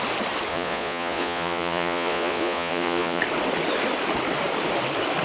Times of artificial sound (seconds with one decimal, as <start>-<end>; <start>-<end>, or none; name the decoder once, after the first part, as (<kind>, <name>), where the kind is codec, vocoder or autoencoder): 0.5-3.2 (vocoder, Vocos)